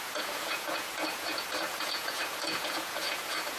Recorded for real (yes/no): no